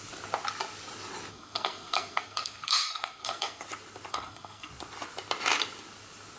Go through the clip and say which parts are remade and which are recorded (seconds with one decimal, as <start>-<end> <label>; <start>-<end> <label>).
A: 0.0-1.3 recorded; 1.3-3.6 remade; 3.6-4.1 recorded; 4.1-4.7 remade; 4.7-6.4 recorded